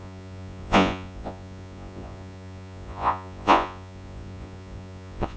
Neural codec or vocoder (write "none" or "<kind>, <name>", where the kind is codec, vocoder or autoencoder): vocoder, Vocos